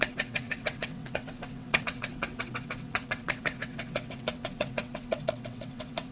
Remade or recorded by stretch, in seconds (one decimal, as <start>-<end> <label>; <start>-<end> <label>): 0.0-6.1 remade